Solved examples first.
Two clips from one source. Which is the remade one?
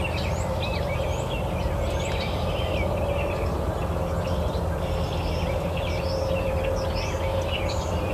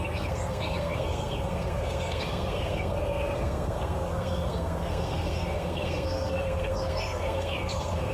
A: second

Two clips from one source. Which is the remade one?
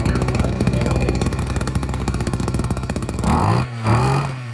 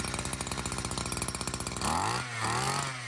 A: first